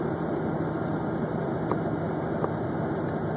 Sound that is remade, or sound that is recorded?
recorded